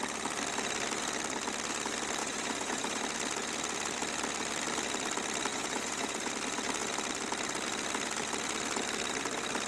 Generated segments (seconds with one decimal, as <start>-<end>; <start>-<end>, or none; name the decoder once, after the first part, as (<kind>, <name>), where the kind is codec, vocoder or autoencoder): 2.2-3.0 (vocoder, Vocos); 5.5-6.3